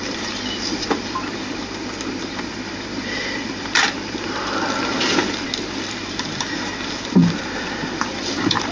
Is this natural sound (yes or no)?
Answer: no